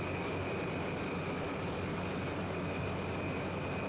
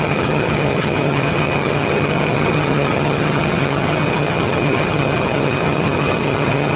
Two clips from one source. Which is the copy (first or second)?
second